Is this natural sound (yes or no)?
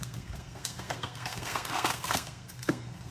no